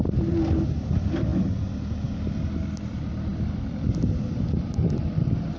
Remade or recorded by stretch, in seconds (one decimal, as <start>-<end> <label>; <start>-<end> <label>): 0.0-5.6 recorded